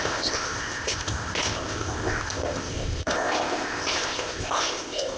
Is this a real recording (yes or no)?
no